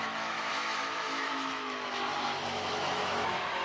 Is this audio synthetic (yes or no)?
yes